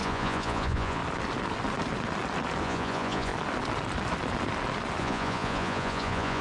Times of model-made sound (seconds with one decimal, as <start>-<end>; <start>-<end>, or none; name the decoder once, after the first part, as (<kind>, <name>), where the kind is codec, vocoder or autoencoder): 0.0-1.0 (vocoder, Vocos); 2.6-3.3; 5.0-6.4